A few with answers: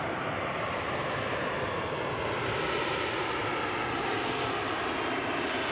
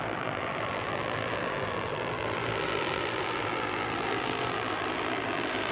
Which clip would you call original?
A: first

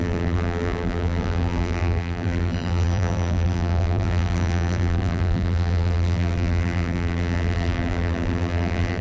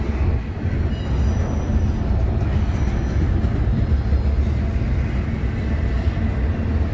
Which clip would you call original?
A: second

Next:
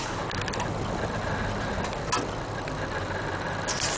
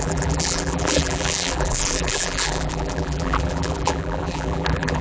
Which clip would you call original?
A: first